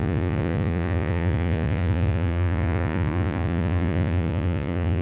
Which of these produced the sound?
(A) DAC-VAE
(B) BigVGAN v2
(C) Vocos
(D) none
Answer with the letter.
C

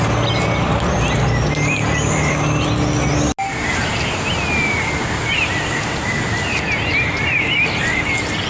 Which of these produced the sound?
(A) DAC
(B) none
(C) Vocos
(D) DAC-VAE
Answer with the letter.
B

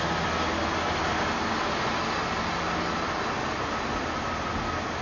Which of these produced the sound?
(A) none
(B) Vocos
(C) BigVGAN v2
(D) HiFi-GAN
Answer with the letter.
A